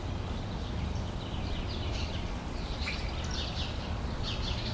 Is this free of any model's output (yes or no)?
yes